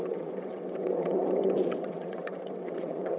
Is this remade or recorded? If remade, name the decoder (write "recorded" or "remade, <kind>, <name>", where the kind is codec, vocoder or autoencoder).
remade, vocoder, WaveNeXt